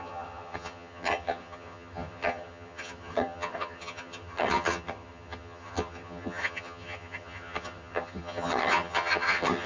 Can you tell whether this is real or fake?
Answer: fake